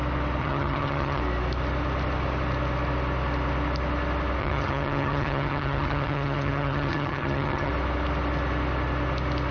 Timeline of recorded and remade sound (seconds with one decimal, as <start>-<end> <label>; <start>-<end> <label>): 0.0-0.4 recorded; 0.4-1.2 remade; 1.2-4.4 recorded; 4.4-7.7 remade; 7.7-9.5 recorded